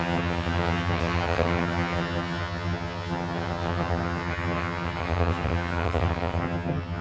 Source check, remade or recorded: remade